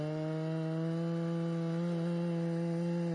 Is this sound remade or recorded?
recorded